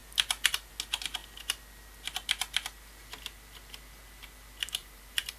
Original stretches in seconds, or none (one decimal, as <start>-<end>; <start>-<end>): 0.0-4.8